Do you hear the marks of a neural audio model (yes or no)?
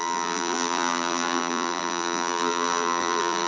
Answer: yes